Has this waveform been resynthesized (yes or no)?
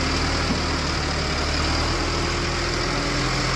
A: no